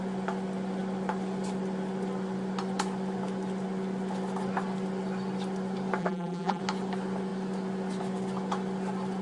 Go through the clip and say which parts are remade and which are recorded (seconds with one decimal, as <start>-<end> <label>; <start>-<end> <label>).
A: 0.0-6.0 recorded; 6.0-6.6 remade; 6.6-9.2 recorded